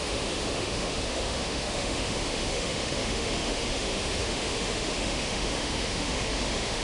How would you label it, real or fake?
fake